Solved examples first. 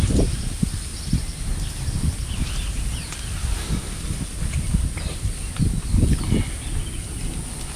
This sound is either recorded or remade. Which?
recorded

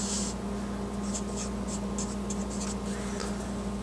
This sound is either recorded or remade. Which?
recorded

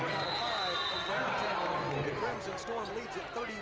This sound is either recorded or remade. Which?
recorded